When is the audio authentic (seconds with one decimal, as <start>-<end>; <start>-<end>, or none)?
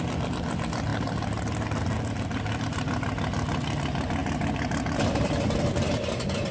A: 0.0-6.5